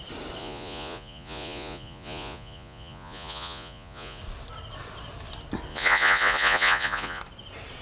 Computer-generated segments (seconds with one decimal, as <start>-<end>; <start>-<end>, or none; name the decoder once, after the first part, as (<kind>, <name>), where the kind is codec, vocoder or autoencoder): 0.4-4.2 (vocoder, Vocos); 5.7-7.2